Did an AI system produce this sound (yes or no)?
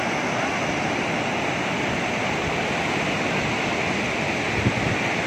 no